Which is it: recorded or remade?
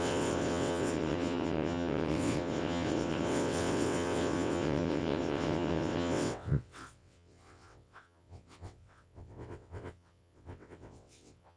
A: remade